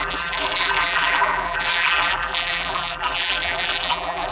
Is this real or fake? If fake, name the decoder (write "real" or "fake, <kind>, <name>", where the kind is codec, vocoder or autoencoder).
fake, vocoder, BigVGAN v2